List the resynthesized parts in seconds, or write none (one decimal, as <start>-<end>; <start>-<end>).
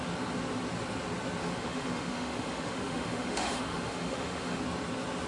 1.4-4.6